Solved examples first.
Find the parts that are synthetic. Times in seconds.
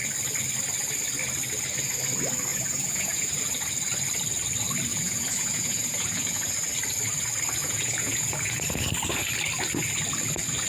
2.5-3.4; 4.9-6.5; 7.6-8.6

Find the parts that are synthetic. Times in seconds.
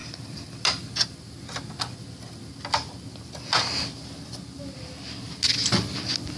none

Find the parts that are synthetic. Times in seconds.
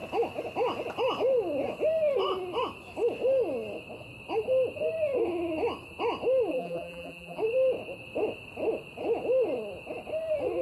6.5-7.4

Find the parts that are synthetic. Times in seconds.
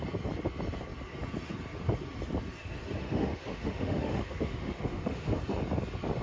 3.0-5.4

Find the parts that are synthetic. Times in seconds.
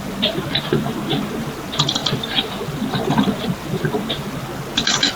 none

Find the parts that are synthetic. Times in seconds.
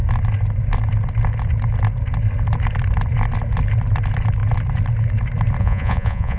5.6-6.4